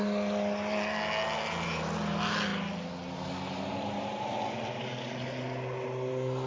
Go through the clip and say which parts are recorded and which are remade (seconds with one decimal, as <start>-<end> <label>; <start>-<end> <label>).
0.0-6.5 recorded